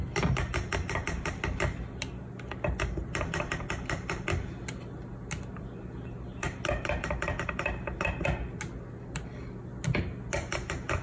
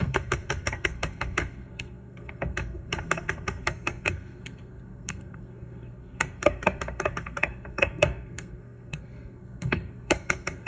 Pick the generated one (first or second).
second